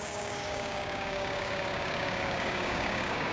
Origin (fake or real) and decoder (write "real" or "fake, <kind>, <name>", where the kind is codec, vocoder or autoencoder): fake, codec, DAC